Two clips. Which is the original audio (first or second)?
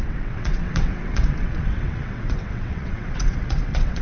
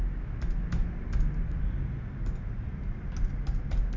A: second